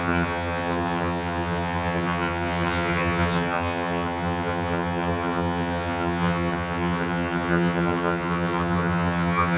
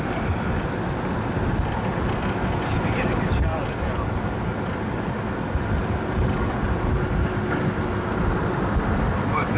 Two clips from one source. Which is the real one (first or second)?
second